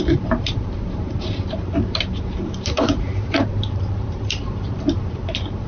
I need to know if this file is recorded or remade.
remade